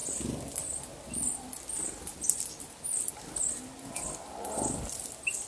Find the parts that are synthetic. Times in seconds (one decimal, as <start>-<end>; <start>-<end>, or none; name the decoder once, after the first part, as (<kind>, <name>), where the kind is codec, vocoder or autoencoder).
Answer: none